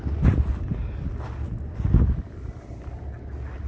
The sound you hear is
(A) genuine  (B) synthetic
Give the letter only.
A